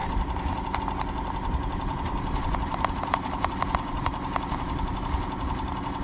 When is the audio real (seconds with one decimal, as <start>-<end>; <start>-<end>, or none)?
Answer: 0.0-2.7; 5.0-6.0